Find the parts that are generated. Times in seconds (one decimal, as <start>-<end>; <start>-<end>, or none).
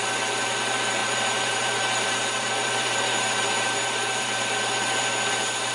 1.0-4.4